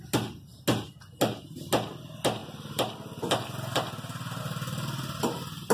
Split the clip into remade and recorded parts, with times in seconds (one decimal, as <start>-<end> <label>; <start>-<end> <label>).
0.0-5.7 recorded